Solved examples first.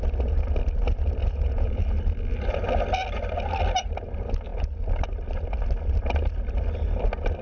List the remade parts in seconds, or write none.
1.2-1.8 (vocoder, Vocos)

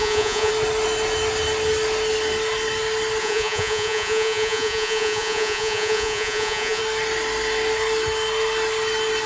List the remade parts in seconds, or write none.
0.0-0.5 (vocoder, Vocos); 3.2-6.8

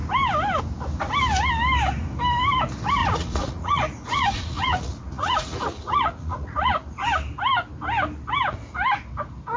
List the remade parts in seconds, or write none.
3.0-6.7 (vocoder, Vocos)

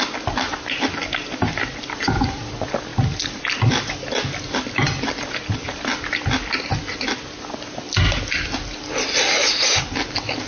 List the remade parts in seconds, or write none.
none